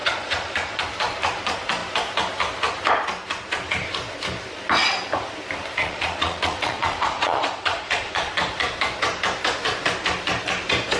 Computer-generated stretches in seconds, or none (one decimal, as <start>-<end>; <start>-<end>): 0.0-0.8; 5.8-8.3